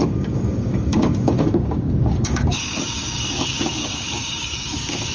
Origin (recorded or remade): remade